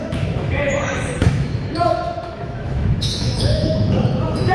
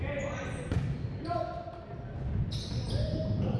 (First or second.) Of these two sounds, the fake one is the first